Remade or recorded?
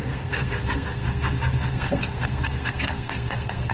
remade